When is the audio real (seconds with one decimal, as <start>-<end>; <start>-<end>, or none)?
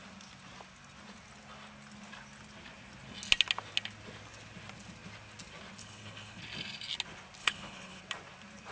0.0-5.8; 6.4-7.4; 8.0-8.7